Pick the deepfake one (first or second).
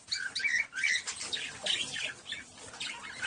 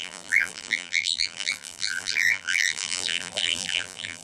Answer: second